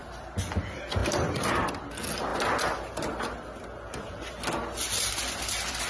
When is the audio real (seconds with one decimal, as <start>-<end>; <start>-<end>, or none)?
0.0-1.0; 1.7-5.9